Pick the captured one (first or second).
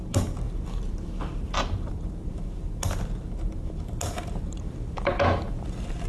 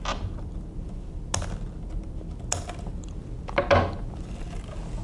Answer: second